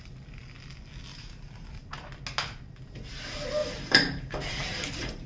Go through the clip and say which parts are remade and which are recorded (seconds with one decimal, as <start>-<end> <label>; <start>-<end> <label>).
0.0-1.1 recorded; 1.1-1.9 remade; 1.9-3.6 recorded; 3.6-5.3 remade

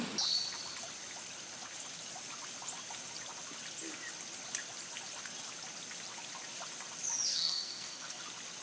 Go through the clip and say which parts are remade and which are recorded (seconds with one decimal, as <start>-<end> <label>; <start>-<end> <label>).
0.0-7.3 recorded; 7.3-8.2 remade; 8.2-8.6 recorded

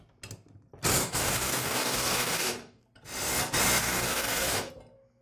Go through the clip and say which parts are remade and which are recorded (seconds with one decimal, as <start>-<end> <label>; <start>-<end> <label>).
0.0-1.0 recorded; 1.0-2.8 remade; 2.8-3.8 recorded; 3.8-4.7 remade; 4.7-5.2 recorded

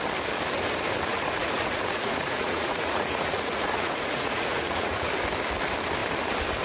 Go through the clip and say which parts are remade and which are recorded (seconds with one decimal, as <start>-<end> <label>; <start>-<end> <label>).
0.0-1.1 recorded; 1.1-5.1 remade; 5.1-6.6 recorded

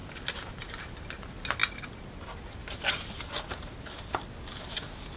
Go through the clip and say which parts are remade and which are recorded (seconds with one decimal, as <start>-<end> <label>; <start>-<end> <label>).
0.0-5.2 recorded

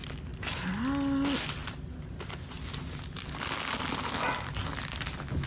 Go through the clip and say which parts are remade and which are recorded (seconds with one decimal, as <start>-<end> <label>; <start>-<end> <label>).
0.0-0.7 remade; 0.7-5.5 recorded